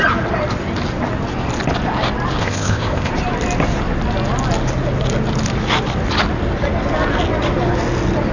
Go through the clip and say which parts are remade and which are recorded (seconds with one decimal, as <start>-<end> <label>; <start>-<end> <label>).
0.0-2.4 recorded; 2.4-3.1 remade; 3.1-8.3 recorded